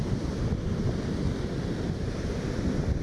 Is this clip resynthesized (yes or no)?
no